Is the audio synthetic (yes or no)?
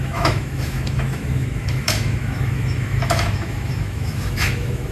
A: yes